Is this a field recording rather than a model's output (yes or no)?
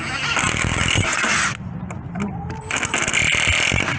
yes